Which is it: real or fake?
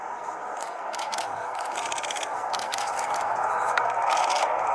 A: fake